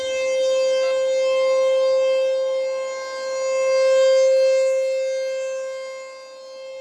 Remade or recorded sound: recorded